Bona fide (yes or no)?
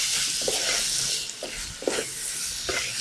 yes